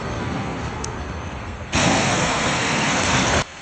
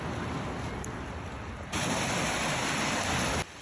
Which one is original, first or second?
second